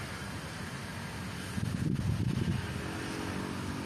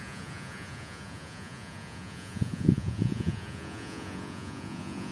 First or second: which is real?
first